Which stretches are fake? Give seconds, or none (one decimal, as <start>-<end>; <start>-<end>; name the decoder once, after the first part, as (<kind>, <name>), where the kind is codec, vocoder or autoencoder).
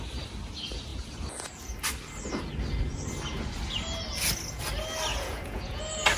5.1-5.8 (vocoder, Vocos)